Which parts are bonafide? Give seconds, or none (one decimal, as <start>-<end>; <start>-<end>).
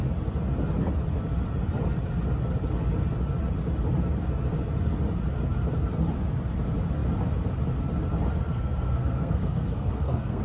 0.0-8.5